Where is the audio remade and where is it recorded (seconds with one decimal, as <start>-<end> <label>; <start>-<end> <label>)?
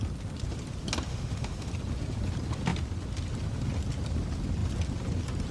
0.0-1.1 recorded; 1.1-1.7 remade; 1.7-5.5 recorded